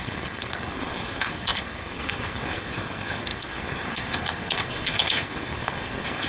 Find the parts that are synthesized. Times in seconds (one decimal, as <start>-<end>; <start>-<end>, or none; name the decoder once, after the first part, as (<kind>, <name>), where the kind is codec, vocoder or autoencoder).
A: 0.0-6.3 (codec, SNAC)